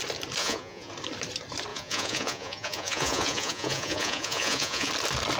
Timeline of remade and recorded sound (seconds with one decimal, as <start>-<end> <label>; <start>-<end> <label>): 0.0-0.4 recorded; 0.4-0.9 remade; 0.9-1.7 recorded; 1.7-4.9 remade; 4.9-5.4 recorded